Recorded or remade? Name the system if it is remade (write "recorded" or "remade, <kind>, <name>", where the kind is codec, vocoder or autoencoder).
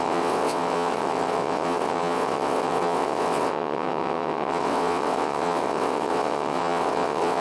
remade, vocoder, WaveNeXt